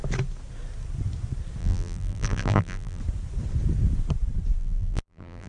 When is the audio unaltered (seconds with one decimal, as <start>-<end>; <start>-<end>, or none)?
0.0-1.6; 3.0-4.6